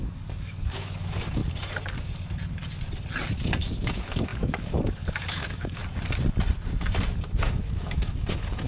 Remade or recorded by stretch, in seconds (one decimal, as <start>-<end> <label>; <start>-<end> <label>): 0.0-1.4 remade; 1.4-3.6 recorded; 3.6-5.8 remade; 5.8-7.4 recorded; 7.4-8.7 remade